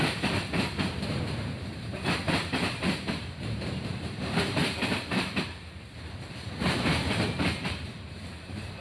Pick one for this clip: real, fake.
fake